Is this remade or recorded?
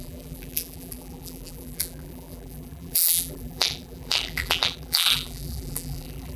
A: remade